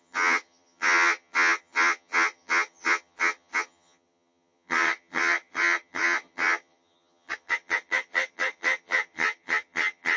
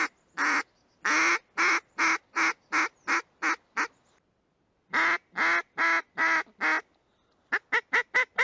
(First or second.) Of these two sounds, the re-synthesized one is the first